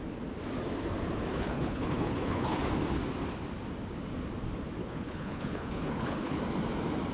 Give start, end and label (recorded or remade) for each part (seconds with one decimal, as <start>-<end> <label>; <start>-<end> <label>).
0.0-1.3 recorded; 1.3-2.6 remade; 2.6-4.8 recorded; 4.8-6.4 remade; 6.4-7.1 recorded